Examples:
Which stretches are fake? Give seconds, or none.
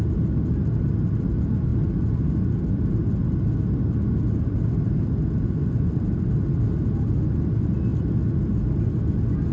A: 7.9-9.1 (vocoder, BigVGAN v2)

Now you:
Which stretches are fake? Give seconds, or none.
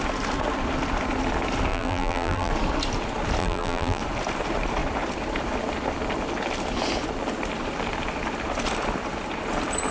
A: 1.7-2.5 (vocoder, BigVGAN v2); 3.4-4.0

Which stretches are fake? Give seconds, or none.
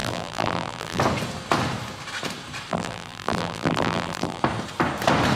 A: 0.0-1.0 (vocoder, BigVGAN v2); 2.7-4.4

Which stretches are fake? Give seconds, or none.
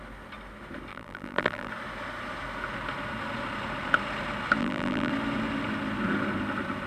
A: 0.9-1.7 (vocoder, BigVGAN v2); 4.6-5.1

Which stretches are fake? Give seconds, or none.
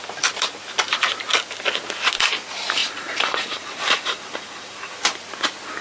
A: 2.8-4.9 (vocoder, BigVGAN v2)